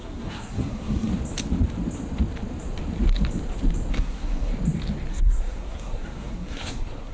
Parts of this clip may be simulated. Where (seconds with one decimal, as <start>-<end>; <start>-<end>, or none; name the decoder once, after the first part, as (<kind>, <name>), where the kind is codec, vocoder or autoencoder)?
0.0-1.1 (codec, SNAC); 3.9-4.5; 5.1-7.1